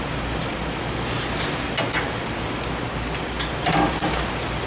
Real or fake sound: real